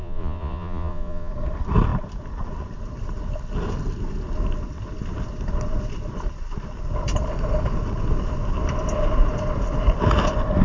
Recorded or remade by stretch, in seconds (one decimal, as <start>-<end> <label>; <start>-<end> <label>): 0.0-1.3 remade; 1.3-10.6 recorded